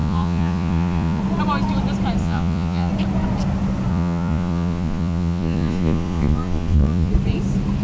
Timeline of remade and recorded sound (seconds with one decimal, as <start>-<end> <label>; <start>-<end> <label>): 0.0-1.2 remade; 1.2-2.2 recorded; 2.2-2.9 remade; 2.9-3.9 recorded; 3.9-7.1 remade; 7.1-7.8 recorded